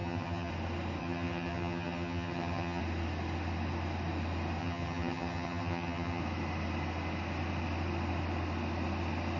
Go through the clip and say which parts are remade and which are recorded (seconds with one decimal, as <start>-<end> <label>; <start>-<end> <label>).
0.0-0.5 remade; 0.5-1.0 recorded; 1.0-2.8 remade; 2.8-4.6 recorded; 4.6-6.2 remade; 6.2-9.4 recorded